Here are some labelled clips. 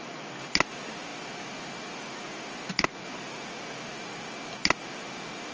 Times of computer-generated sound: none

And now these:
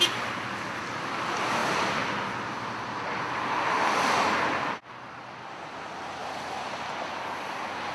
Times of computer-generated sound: none